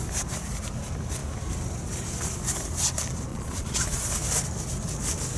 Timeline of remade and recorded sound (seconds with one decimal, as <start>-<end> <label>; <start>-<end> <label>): 0.0-3.3 recorded; 3.3-4.1 remade; 4.1-5.4 recorded